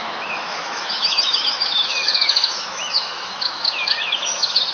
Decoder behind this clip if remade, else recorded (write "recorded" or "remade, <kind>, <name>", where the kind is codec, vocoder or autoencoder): remade, autoencoder, DAC-VAE